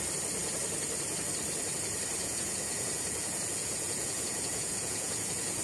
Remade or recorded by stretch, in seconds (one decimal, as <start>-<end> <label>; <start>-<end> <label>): 0.0-2.2 recorded; 2.2-5.6 remade